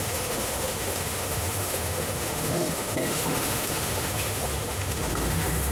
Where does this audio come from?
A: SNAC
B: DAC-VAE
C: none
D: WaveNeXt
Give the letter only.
B